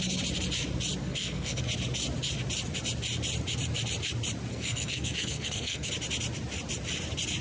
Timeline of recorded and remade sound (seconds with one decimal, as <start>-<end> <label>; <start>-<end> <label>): 0.0-1.0 recorded; 1.0-1.6 remade; 1.6-4.5 recorded; 4.5-5.9 remade; 5.9-7.4 recorded